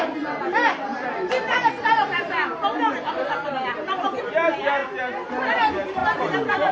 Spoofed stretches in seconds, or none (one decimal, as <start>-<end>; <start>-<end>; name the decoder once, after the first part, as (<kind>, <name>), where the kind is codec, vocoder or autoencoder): 0.9-4.2 (vocoder, BigVGAN v2)